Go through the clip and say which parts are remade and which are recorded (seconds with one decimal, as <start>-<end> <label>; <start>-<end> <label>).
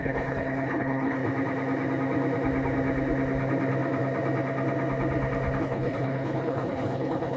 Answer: 0.0-1.2 remade; 1.2-5.6 recorded; 5.6-7.4 remade